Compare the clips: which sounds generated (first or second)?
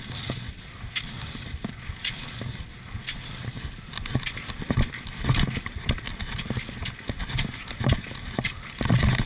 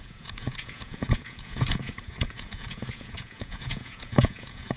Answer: second